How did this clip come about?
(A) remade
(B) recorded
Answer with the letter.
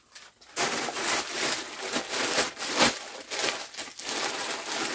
B